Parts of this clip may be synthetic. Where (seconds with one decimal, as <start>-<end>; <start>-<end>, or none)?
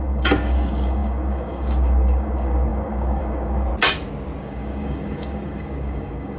0.0-3.7; 4.4-6.4